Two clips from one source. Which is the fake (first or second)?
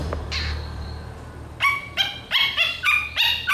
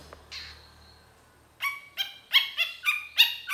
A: first